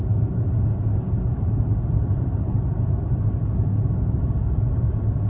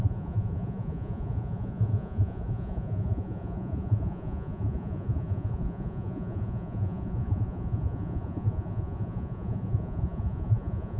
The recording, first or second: first